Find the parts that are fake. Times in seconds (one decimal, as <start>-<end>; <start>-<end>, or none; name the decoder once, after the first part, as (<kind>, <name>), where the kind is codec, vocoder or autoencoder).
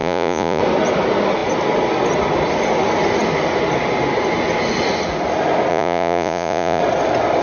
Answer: 0.0-0.6 (vocoder, Vocos); 5.7-6.8